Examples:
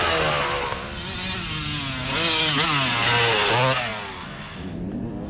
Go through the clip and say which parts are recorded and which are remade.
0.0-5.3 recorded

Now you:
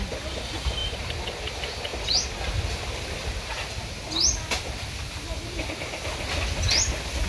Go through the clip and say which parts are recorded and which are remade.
0.0-7.3 recorded

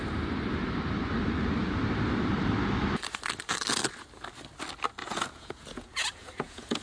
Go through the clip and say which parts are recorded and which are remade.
0.0-5.0 recorded; 5.0-6.8 remade

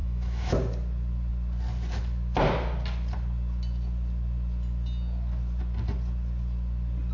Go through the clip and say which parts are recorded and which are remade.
0.0-0.5 remade; 0.5-7.1 recorded

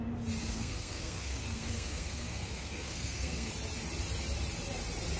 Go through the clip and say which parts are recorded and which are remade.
0.0-0.4 recorded; 0.4-3.5 remade; 3.5-5.2 recorded

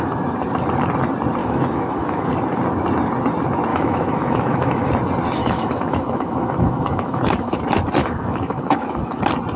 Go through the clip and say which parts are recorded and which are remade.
0.0-1.4 recorded; 1.4-2.3 remade; 2.3-3.7 recorded; 3.7-4.9 remade; 4.9-5.4 recorded; 5.4-7.6 remade; 7.6-8.0 recorded; 8.0-9.2 remade; 9.2-9.6 recorded

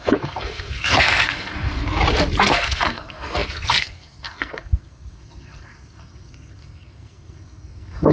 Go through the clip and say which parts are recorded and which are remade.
0.0-2.0 remade; 2.0-2.5 recorded; 2.5-8.1 remade